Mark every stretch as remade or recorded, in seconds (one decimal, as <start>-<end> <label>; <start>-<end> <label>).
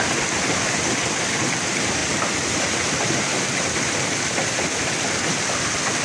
0.0-6.0 recorded